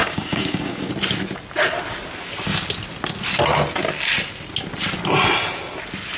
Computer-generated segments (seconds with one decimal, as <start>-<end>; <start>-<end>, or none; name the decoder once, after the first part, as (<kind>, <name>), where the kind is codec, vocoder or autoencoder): 0.0-0.9 (codec, DAC)

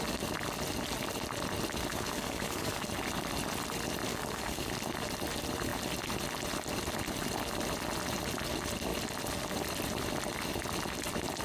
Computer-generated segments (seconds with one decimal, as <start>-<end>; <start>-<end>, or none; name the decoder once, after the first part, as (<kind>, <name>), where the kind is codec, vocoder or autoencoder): 1.9-2.9 (codec, DAC); 4.1-4.7